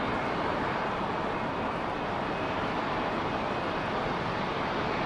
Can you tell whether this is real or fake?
fake